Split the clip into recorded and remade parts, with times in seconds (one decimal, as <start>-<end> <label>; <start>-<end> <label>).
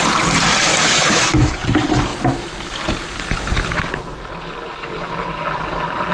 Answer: 0.0-0.7 recorded; 0.7-1.5 remade; 1.5-6.1 recorded